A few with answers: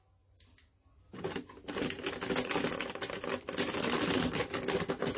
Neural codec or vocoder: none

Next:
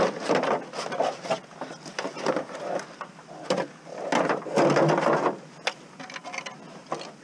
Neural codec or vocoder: none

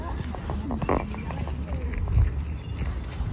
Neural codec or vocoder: none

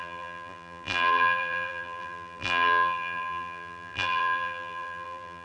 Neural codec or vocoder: vocoder, BigVGAN v2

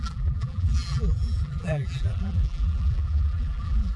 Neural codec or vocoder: vocoder, BigVGAN v2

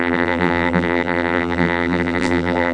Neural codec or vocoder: vocoder, BigVGAN v2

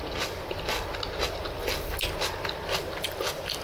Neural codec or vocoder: none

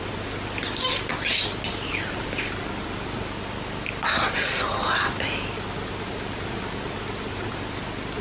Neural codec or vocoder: none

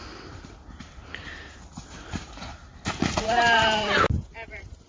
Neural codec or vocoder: vocoder, BigVGAN v2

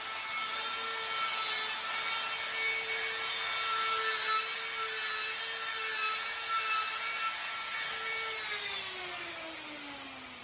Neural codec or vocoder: none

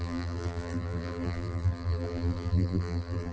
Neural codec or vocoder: vocoder, BigVGAN v2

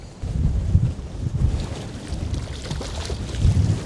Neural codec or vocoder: none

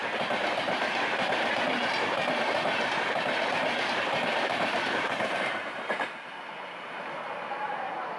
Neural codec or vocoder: vocoder, BigVGAN v2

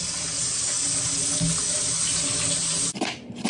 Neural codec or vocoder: none